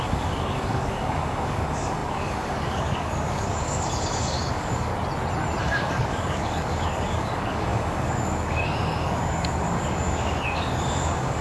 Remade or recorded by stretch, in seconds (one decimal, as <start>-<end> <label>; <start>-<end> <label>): 0.0-4.9 remade; 4.9-5.6 recorded; 5.6-11.4 remade